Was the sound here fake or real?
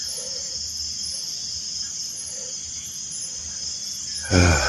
real